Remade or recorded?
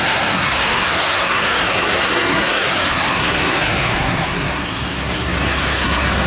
remade